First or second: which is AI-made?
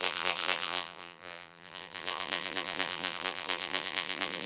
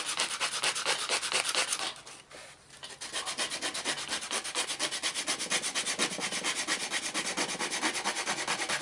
first